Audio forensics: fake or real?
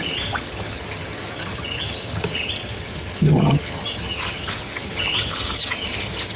fake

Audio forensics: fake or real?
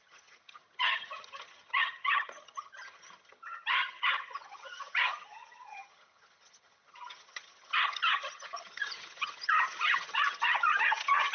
fake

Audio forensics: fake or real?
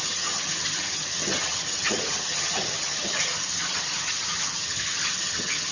fake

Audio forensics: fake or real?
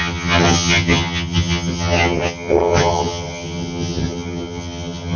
fake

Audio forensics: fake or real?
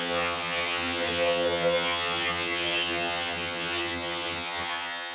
fake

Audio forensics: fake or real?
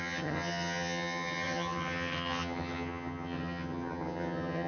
fake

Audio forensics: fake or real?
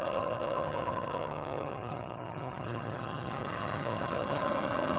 fake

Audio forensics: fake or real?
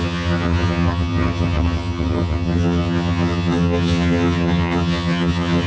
fake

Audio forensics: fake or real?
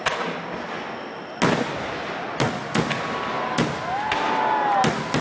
real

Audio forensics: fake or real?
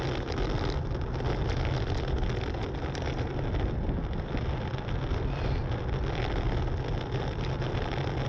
real